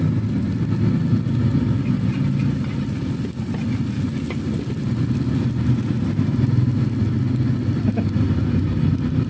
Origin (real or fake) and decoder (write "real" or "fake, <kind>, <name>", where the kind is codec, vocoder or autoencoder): real